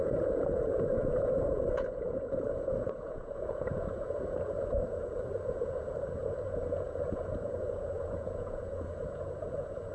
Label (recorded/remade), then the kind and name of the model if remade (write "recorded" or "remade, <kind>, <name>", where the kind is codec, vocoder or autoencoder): remade, vocoder, Vocos